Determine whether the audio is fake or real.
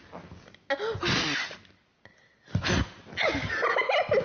real